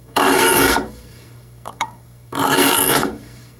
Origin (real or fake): fake